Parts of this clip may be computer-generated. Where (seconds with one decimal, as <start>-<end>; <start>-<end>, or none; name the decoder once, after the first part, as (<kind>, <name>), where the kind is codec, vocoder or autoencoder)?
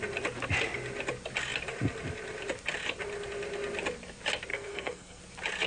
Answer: 4.5-5.2 (codec, SNAC)